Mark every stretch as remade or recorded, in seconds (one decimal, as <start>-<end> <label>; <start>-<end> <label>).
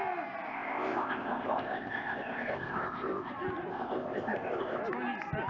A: 0.0-0.5 recorded; 0.5-3.3 remade; 3.3-3.7 recorded; 3.7-4.8 remade; 4.8-5.5 recorded